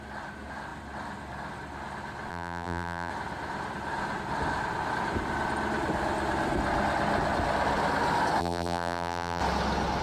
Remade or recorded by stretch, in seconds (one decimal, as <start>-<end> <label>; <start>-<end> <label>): 0.0-2.3 recorded; 2.3-3.1 remade; 3.1-8.4 recorded; 8.4-9.4 remade; 9.4-10.0 recorded